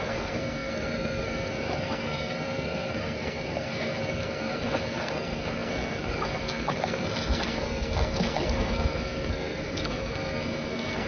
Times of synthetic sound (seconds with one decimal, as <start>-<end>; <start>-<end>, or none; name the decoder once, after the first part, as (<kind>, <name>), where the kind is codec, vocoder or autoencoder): 0.0-11.1 (codec, SNAC)